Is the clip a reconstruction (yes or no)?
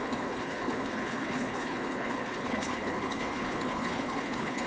yes